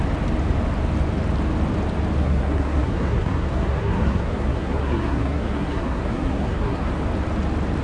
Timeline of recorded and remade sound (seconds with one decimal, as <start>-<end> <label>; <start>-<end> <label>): 0.0-2.2 recorded; 2.2-6.9 remade; 6.9-7.8 recorded